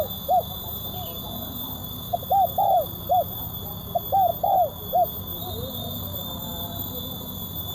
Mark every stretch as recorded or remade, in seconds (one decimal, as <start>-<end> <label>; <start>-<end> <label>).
0.0-1.8 recorded; 1.8-3.4 remade; 3.4-5.3 recorded; 5.3-6.9 remade; 6.9-7.7 recorded